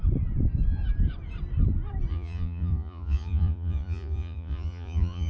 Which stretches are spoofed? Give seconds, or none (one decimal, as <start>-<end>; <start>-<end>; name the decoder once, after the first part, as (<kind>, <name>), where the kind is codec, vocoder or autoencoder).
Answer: 2.1-5.3 (vocoder, Vocos)